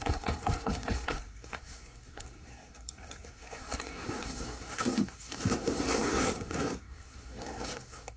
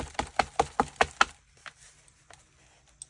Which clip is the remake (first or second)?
first